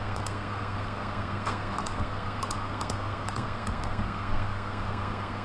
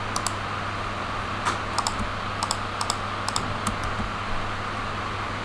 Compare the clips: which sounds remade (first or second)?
first